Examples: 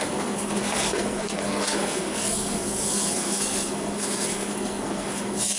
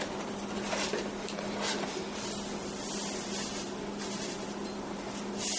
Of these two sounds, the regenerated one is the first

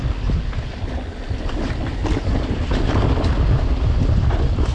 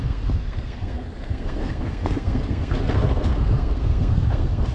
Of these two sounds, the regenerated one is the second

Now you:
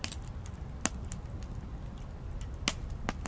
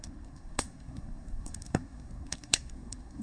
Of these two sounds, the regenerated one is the second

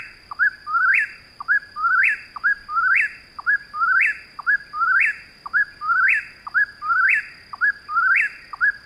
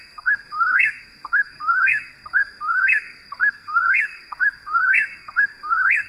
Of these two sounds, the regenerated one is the second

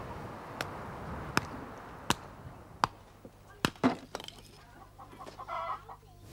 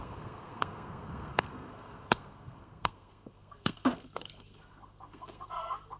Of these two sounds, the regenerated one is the second